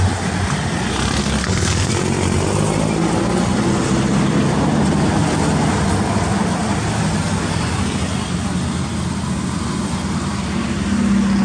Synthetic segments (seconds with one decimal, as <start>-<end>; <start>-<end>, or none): 1.2-1.9